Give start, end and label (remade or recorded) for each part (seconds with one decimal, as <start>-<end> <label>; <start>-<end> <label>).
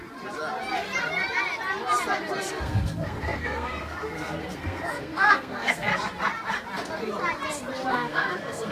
0.0-2.5 recorded; 2.5-5.9 remade; 5.9-7.9 recorded; 7.9-8.7 remade